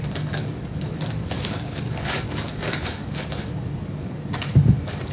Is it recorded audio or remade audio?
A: remade